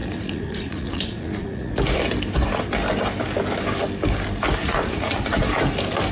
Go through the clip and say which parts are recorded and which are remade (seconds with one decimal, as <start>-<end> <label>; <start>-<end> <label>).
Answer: 0.0-1.7 remade; 1.7-4.6 recorded; 4.6-5.4 remade; 5.4-6.1 recorded